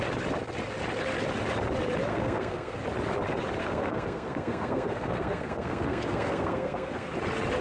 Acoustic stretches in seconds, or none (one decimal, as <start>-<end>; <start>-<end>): 0.0-2.1; 2.8-3.6; 7.1-7.6